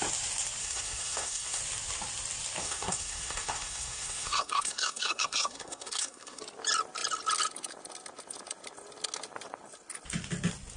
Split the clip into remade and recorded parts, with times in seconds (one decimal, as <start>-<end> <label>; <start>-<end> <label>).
0.0-0.6 recorded; 0.6-1.6 remade; 1.6-2.6 recorded; 2.6-6.4 remade; 6.4-10.8 recorded